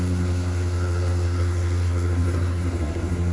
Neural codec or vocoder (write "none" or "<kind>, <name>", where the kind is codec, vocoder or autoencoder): codec, SNAC